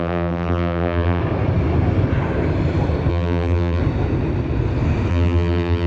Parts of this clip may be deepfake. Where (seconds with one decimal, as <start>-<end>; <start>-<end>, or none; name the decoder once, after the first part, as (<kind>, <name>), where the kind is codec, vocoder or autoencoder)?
0.0-1.2 (vocoder, BigVGAN v2); 3.1-3.8; 5.1-5.9